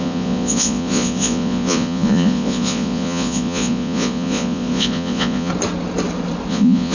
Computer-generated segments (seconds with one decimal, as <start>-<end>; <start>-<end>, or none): 0.0-5.5; 6.5-6.9